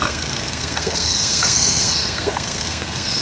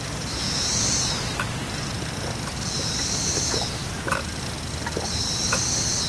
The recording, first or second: second